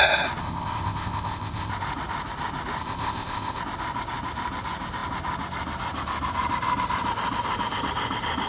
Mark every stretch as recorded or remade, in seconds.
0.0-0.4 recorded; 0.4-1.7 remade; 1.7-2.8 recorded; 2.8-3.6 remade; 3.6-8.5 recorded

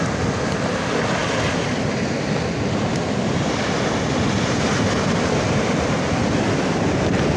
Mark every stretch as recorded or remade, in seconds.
0.0-7.4 recorded

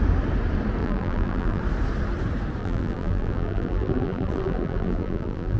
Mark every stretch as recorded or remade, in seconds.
0.0-0.8 recorded; 0.8-1.6 remade; 1.6-2.6 recorded; 2.6-5.6 remade

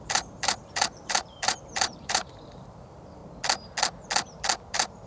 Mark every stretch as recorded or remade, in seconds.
0.0-3.2 remade; 3.2-4.6 recorded; 4.6-5.1 remade

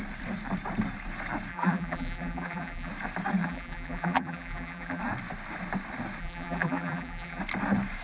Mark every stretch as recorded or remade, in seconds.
0.0-1.5 recorded; 1.5-2.9 remade; 2.9-3.4 recorded; 3.4-5.0 remade; 5.0-6.2 recorded; 6.2-7.4 remade; 7.4-8.0 recorded